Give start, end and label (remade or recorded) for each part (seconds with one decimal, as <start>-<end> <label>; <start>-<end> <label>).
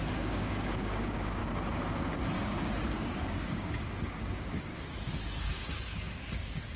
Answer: 0.0-1.4 remade; 1.4-2.4 recorded; 2.4-4.7 remade; 4.7-5.4 recorded; 5.4-6.8 remade